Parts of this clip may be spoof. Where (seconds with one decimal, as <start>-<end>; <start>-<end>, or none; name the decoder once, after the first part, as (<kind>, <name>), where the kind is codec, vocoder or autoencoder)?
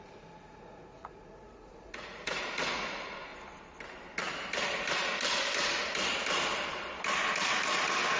0.0-3.3 (vocoder, Vocos)